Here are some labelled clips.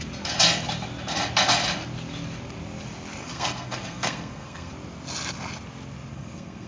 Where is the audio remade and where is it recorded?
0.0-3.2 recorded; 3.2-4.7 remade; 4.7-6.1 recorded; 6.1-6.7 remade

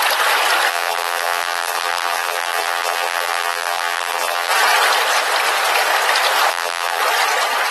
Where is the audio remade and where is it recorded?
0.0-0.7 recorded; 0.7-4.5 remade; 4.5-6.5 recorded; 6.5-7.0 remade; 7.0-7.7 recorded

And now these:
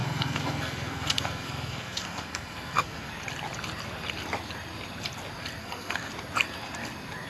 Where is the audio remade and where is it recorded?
0.0-3.1 remade; 3.1-5.6 recorded; 5.6-6.1 remade; 6.1-7.3 recorded

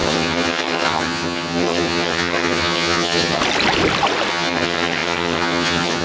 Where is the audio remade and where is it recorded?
0.0-3.4 remade; 3.4-4.3 recorded; 4.3-6.0 remade

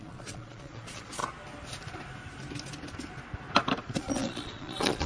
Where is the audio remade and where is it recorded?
0.0-1.2 remade; 1.2-3.8 recorded; 3.8-5.1 remade

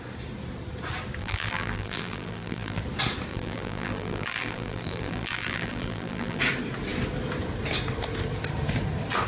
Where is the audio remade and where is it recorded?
0.0-1.2 recorded; 1.2-2.8 remade; 2.8-3.3 recorded; 3.3-6.4 remade; 6.4-9.3 recorded

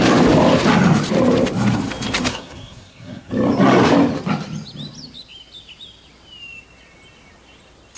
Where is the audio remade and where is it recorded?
0.0-2.3 recorded; 2.3-3.3 remade; 3.3-8.0 recorded